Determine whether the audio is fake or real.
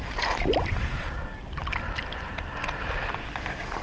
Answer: fake